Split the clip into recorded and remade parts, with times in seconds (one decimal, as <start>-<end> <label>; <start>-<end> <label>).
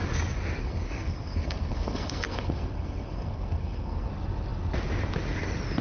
0.0-0.6 recorded; 0.6-4.1 remade; 4.1-5.8 recorded